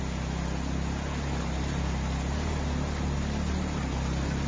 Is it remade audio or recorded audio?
recorded